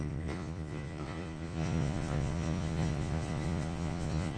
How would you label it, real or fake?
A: fake